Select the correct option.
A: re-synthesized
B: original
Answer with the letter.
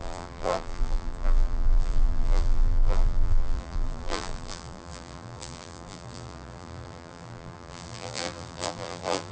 A